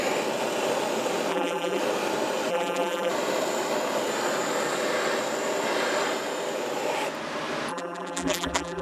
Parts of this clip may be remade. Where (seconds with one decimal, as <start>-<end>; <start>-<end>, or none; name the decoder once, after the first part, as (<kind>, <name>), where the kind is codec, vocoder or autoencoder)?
1.3-1.8 (vocoder, BigVGAN v2); 2.5-3.1; 7.7-8.8